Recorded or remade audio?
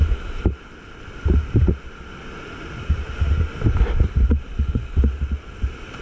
recorded